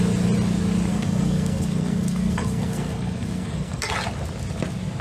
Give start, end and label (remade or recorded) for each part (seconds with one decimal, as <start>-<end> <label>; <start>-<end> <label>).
0.0-0.9 recorded; 0.9-3.9 remade; 3.9-5.0 recorded